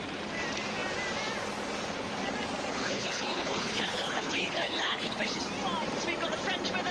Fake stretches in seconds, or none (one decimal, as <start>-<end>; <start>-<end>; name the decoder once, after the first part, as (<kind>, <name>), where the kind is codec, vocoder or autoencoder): 2.7-5.4 (codec, HILCodec)